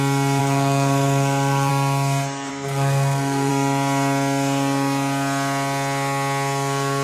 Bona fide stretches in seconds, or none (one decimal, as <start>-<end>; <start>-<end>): 0.0-0.4; 1.7-2.5; 3.5-7.0